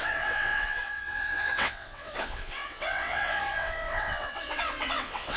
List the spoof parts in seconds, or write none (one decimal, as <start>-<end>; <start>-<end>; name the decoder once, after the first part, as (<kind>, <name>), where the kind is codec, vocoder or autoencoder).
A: 0.0-5.4 (vocoder, WaveNeXt)